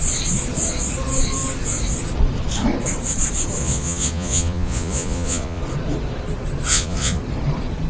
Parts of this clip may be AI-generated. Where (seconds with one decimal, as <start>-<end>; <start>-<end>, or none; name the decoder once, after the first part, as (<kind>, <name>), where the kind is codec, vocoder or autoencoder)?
3.6-5.6 (vocoder, Vocos); 6.7-7.2